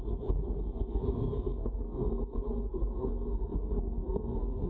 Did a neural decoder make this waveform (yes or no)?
yes